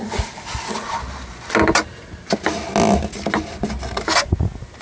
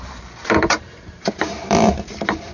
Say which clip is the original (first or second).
first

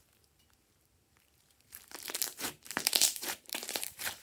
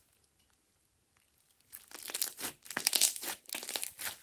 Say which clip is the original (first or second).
second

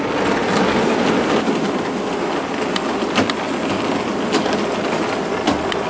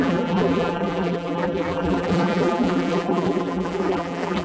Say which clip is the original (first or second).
first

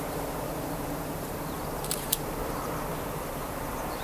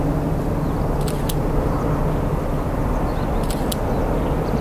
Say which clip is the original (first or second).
second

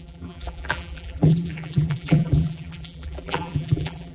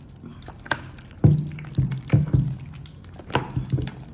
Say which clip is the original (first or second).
second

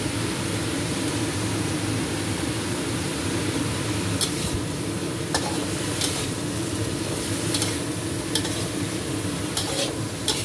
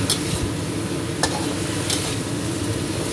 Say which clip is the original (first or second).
second